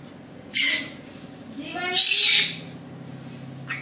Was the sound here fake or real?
real